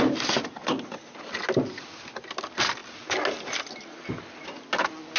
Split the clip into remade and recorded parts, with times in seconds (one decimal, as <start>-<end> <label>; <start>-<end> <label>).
0.0-5.2 recorded